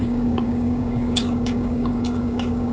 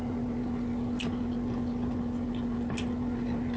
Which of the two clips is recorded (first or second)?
second